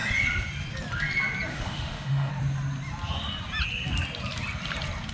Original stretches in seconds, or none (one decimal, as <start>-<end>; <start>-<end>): 0.0-1.5; 2.3-5.1